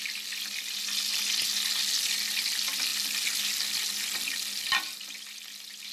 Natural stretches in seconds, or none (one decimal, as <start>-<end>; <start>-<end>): 0.0-5.9